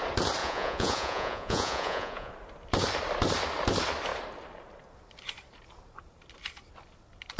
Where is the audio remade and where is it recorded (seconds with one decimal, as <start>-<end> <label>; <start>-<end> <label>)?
0.0-0.4 recorded; 0.4-2.3 remade; 2.3-7.4 recorded